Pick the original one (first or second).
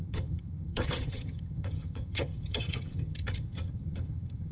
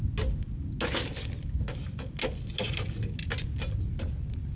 second